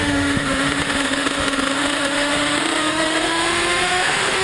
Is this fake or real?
fake